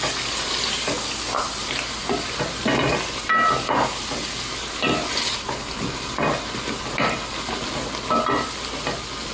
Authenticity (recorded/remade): recorded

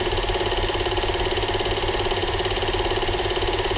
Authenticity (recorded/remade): recorded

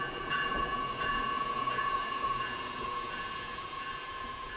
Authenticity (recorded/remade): remade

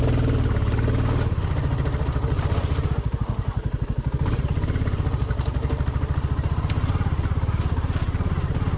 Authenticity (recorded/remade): recorded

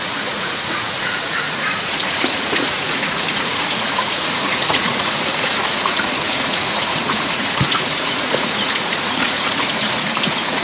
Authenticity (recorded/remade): remade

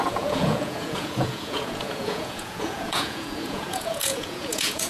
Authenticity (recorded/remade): remade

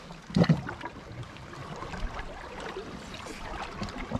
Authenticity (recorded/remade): recorded